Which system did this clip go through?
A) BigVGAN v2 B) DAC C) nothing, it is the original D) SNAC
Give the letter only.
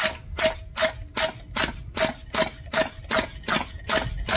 C